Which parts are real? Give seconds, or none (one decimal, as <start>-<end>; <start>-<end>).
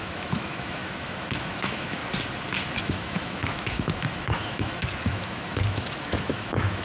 2.0-2.8